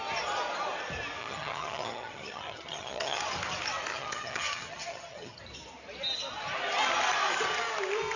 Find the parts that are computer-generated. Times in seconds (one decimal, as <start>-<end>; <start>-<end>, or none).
1.2-3.2; 3.9-5.4